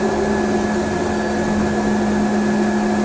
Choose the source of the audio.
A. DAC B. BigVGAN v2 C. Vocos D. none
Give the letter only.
D